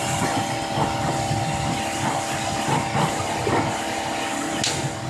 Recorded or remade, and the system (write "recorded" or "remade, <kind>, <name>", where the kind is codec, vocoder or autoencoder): recorded